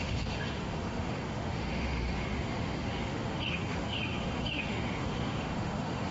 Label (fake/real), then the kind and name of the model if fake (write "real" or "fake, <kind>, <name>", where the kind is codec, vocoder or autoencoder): fake, autoencoder, DAC-VAE